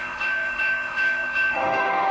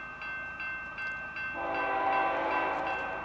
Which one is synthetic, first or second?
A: first